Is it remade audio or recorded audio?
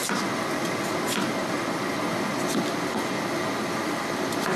recorded